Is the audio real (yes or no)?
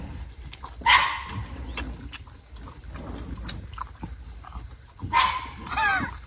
yes